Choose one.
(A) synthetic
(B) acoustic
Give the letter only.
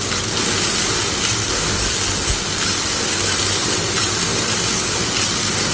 B